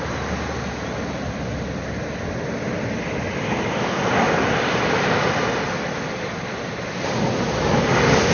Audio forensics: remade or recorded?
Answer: recorded